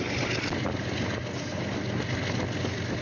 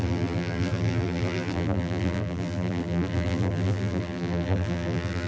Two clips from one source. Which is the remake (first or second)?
second